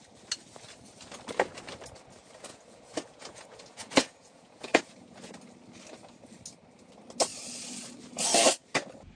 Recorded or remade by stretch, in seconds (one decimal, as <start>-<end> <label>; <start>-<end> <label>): 0.0-2.5 recorded; 2.5-5.3 remade; 5.3-9.2 recorded